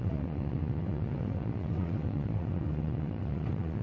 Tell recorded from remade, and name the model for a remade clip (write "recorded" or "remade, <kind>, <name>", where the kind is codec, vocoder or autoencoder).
remade, vocoder, WaveNeXt